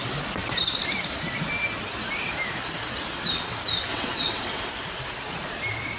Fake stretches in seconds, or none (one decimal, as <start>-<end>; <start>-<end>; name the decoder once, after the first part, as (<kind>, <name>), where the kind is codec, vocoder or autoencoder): 3.9-4.7 (vocoder, WaveNeXt)